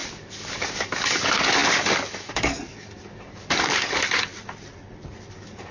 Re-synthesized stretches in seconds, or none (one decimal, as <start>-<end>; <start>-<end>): 0.0-4.3; 5.3-5.7